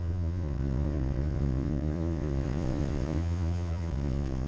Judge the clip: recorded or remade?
remade